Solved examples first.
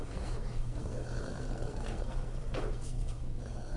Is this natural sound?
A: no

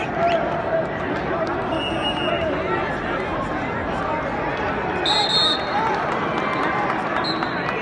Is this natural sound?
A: yes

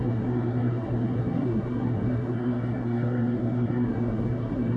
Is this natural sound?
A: no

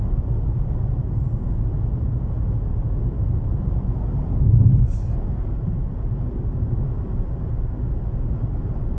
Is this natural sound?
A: yes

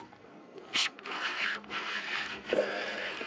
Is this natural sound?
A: no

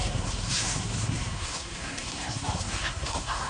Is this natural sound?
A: no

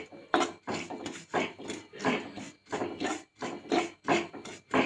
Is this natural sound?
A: yes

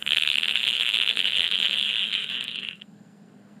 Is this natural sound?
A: no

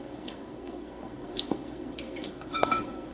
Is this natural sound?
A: no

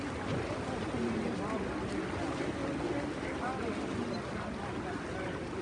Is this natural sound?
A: yes